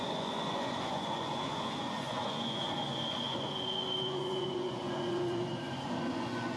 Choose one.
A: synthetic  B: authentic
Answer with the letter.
A